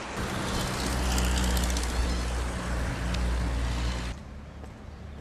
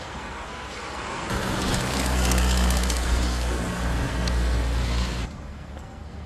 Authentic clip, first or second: first